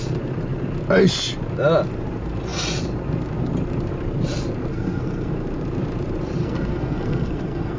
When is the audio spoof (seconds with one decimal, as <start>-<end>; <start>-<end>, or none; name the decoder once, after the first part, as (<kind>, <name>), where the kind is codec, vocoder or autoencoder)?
4.7-5.3 (codec, SNAC); 6.4-7.8